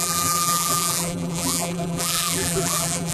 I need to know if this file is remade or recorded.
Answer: remade